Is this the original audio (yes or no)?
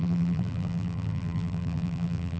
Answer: no